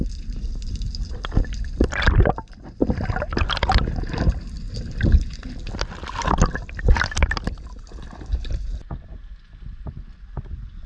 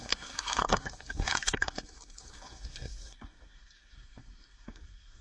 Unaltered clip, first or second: first